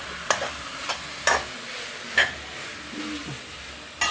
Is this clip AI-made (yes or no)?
no